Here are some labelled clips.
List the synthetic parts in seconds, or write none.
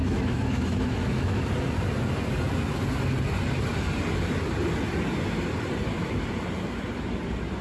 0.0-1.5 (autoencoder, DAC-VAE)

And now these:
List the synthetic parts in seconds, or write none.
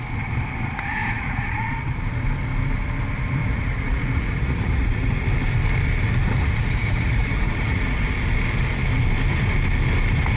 0.9-1.7 (vocoder, Vocos); 3.4-5.1; 6.4-8.0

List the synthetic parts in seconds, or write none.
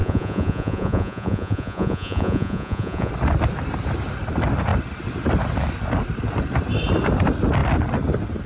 0.0-3.1 (vocoder, Vocos)